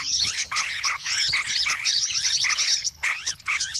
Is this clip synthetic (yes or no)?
yes